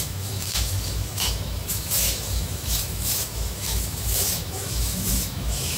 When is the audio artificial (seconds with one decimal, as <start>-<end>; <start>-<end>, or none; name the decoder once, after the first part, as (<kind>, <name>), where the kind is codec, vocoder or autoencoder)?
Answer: 0.0-5.8 (autoencoder, DAC-VAE)

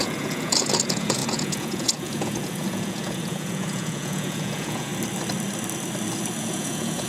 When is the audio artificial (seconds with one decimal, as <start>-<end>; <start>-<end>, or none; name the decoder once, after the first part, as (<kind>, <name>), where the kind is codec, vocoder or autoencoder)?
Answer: 0.0-4.9 (vocoder, Vocos); 6.4-7.1

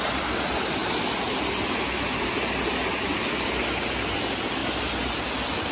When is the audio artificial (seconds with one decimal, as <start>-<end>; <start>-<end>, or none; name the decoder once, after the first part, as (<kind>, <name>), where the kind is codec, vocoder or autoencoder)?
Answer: none

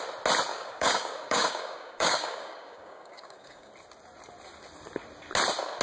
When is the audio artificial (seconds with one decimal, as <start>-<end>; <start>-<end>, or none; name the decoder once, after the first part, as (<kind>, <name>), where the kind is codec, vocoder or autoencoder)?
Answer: 0.5-3.7 (codec, DAC)

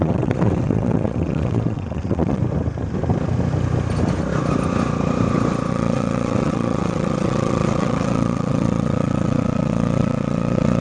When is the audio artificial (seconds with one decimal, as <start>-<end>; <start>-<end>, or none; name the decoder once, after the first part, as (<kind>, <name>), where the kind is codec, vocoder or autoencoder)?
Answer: 0.0-2.4 (vocoder, WaveNeXt); 5.7-10.8

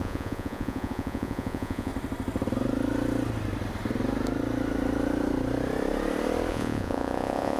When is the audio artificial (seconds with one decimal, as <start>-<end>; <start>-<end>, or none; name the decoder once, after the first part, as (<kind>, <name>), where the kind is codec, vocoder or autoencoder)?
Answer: 0.0-1.9 (vocoder, Vocos); 6.5-7.6

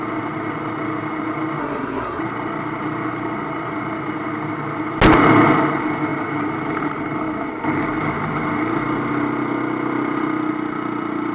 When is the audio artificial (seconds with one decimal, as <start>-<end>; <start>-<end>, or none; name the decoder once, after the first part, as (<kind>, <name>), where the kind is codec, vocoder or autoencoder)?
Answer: 1.6-2.2 (codec, SNAC)

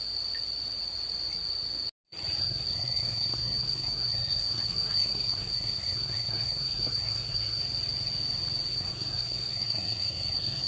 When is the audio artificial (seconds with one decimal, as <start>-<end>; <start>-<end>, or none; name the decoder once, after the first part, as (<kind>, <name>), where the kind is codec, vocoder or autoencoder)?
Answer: 2.4-7.6 (codec, SNAC); 8.7-10.7